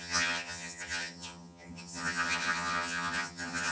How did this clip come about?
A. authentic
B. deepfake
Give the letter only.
B